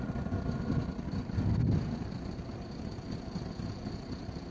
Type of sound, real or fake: real